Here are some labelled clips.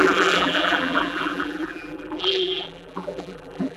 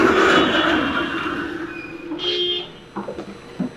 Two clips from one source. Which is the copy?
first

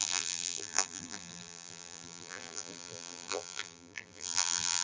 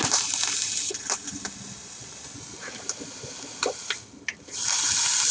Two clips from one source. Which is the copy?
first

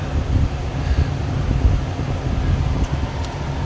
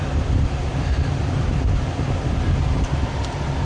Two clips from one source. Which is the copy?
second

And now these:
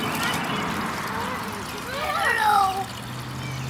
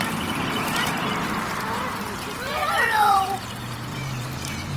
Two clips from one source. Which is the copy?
second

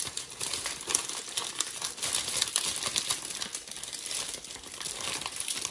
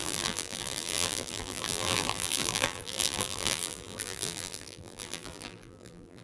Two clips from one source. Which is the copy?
second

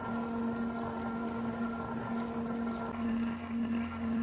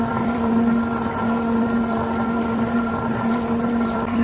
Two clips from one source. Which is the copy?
second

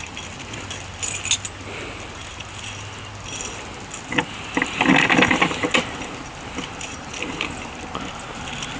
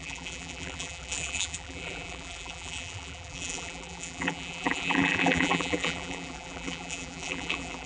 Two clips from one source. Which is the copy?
second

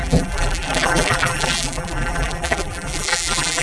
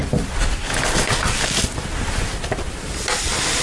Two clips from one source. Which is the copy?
first